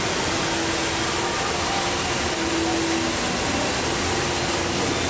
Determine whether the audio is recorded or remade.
recorded